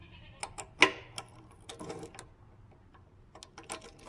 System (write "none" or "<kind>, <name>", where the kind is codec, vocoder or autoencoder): none